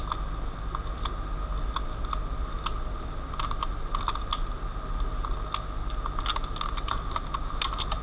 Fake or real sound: real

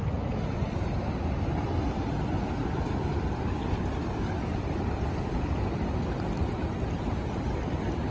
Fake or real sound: real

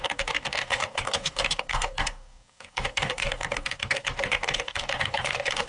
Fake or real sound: fake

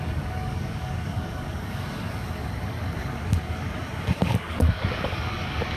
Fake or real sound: fake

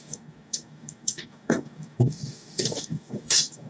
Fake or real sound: fake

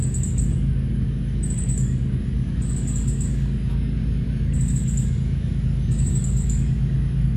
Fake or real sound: fake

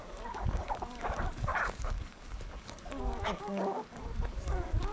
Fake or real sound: fake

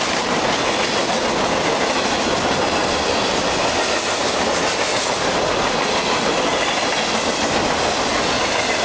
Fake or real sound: real